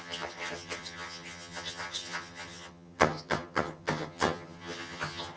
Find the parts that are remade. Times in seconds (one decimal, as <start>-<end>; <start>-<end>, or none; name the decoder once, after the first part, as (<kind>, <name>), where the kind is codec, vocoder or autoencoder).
0.0-5.4 (vocoder, HiFi-GAN)